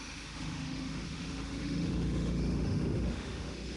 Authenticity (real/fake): fake